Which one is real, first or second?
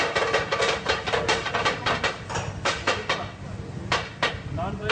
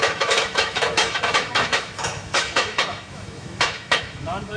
first